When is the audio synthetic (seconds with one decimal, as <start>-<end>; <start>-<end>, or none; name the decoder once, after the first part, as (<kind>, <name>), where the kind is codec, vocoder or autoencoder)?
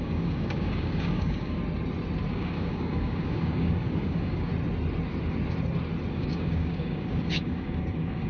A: 0.0-1.6 (codec, DAC); 2.3-4.5; 6.1-8.3